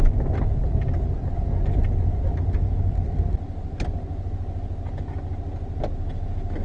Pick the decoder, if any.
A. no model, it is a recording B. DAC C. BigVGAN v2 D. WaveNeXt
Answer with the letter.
A